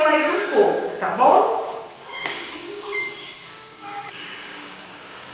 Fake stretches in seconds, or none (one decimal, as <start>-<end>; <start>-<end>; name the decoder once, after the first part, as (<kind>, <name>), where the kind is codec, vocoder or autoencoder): 0.0-5.3 (codec, DAC)